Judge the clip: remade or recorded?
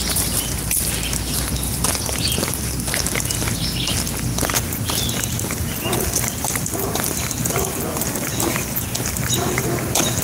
recorded